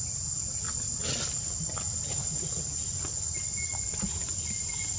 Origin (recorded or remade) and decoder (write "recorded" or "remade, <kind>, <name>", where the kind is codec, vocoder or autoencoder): recorded